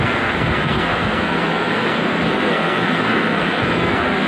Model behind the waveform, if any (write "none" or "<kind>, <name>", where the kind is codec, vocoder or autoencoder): codec, SNAC